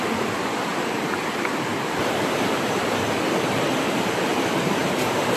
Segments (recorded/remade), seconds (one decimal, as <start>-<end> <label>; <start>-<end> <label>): 0.0-0.7 recorded; 0.7-1.2 remade; 1.2-1.7 recorded; 1.7-3.2 remade; 3.2-4.8 recorded; 4.8-5.4 remade